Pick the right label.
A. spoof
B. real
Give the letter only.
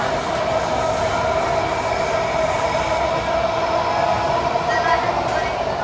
B